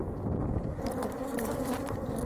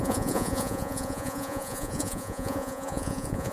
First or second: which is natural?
first